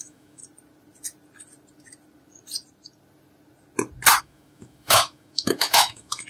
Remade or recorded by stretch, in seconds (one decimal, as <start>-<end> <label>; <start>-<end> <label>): 0.0-0.4 remade; 0.4-4.2 recorded; 4.2-6.3 remade